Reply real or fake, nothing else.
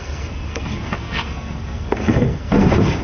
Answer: fake